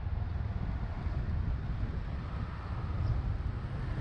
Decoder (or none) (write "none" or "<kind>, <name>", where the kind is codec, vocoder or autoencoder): none